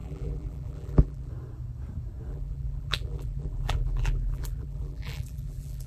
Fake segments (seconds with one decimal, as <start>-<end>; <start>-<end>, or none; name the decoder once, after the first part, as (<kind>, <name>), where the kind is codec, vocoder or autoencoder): 0.0-1.3 (vocoder, BigVGAN v2); 2.3-5.9